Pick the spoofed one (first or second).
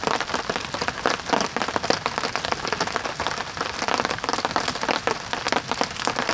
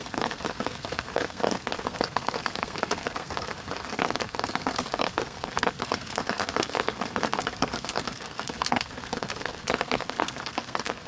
second